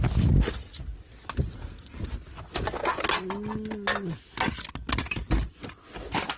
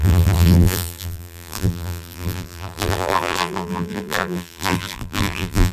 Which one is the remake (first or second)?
second